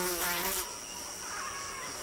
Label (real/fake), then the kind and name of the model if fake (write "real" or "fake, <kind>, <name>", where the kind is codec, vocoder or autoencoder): real